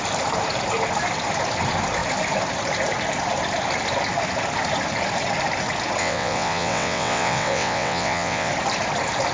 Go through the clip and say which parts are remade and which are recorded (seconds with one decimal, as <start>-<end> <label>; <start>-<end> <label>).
0.0-6.0 recorded; 6.0-8.5 remade; 8.5-9.3 recorded